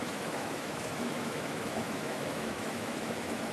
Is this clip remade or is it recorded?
remade